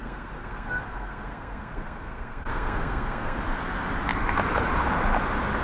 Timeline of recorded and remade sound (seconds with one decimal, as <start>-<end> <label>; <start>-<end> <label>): 0.0-3.4 remade; 3.4-5.6 recorded